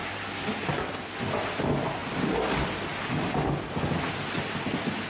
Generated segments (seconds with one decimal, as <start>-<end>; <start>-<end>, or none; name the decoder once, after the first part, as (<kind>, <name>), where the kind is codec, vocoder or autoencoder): none